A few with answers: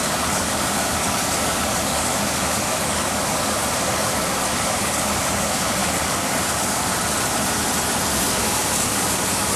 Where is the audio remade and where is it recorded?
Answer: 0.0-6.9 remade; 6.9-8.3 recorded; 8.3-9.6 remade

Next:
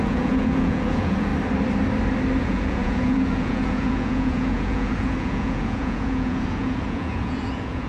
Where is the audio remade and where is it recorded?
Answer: 0.0-1.3 remade; 1.3-2.4 recorded; 2.4-7.9 remade

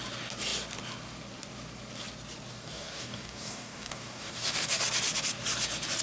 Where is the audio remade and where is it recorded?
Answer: 0.0-2.5 recorded; 2.5-4.8 remade; 4.8-6.0 recorded

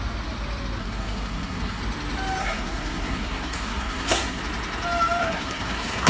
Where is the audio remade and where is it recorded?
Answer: 0.0-0.8 recorded; 0.8-1.8 remade; 1.8-2.4 recorded; 2.4-4.4 remade; 4.4-5.2 recorded; 5.2-6.1 remade

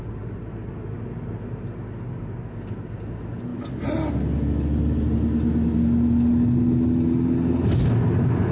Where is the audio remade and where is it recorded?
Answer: 0.0-8.5 recorded

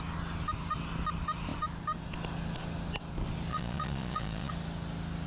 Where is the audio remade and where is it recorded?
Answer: 0.0-3.5 recorded; 3.5-4.5 remade; 4.5-5.3 recorded